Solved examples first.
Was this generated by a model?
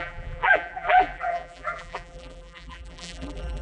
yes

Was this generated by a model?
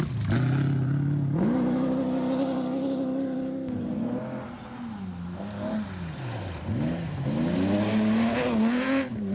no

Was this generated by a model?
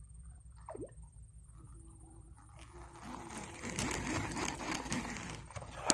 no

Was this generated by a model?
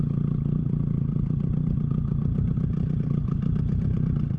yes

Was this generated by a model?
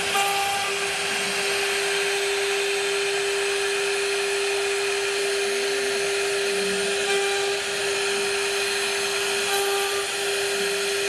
no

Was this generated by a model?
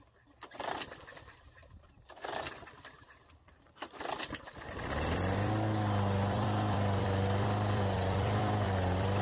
yes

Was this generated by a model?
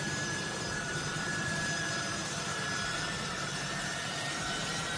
yes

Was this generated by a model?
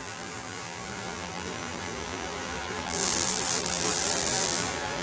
yes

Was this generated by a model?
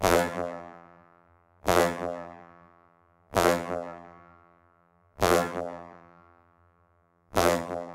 yes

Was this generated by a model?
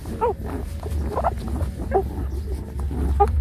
no